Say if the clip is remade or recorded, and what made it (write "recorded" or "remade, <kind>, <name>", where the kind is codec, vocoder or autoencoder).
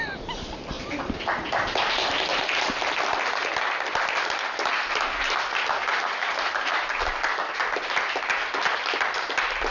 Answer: recorded